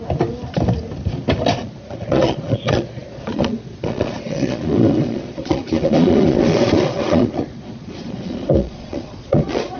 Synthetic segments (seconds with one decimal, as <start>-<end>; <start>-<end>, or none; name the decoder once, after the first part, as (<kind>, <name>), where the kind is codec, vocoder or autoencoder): 1.6-9.8 (vocoder, Vocos)